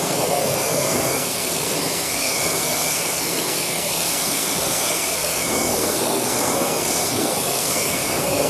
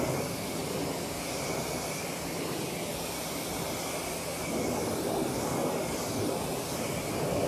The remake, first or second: first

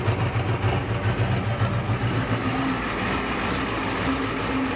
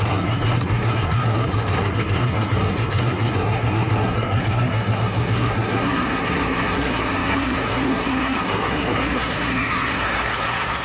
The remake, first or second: second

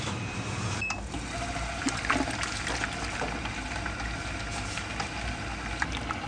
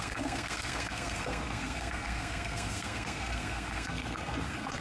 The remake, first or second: second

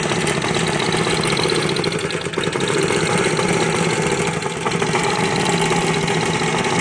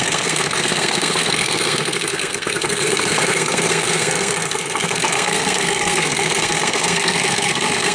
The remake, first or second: second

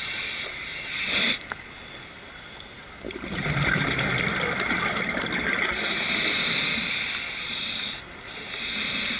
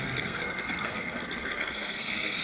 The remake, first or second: second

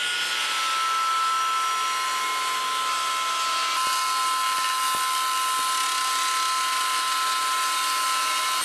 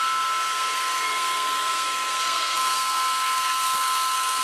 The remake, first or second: second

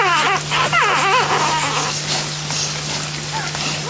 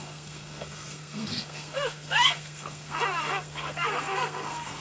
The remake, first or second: second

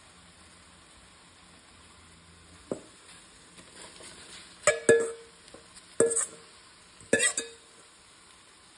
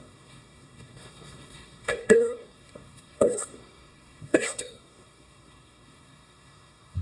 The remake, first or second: second